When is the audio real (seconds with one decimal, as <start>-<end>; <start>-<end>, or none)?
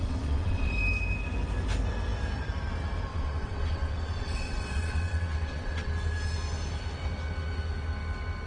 0.7-3.1; 5.9-8.5